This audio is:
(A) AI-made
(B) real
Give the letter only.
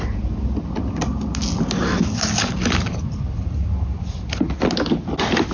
B